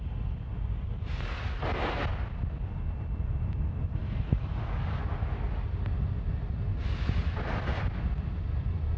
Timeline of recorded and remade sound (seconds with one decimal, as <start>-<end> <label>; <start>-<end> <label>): 0.0-9.0 recorded